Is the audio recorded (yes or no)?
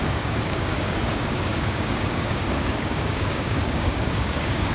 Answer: no